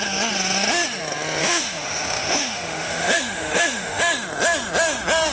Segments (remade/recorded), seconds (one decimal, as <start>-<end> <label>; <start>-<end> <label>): 0.0-1.4 recorded; 1.4-4.0 remade; 4.0-5.3 recorded